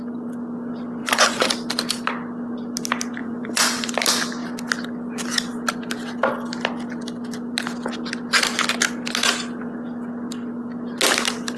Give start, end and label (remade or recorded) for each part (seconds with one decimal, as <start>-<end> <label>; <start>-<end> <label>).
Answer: 0.0-1.0 recorded; 1.0-1.5 remade; 1.5-3.2 recorded; 3.2-3.9 remade; 3.9-11.6 recorded